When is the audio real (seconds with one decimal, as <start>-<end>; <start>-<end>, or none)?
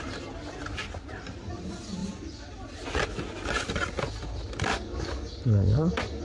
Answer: 0.0-4.7